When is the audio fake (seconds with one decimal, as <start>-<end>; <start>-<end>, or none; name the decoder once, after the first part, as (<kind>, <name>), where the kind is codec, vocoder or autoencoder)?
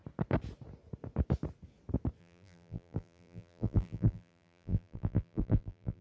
2.2-6.0 (vocoder, BigVGAN v2)